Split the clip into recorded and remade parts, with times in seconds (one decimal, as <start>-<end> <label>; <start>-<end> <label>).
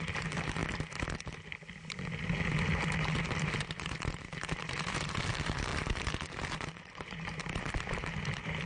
0.0-0.6 remade; 0.6-3.4 recorded; 3.4-8.7 remade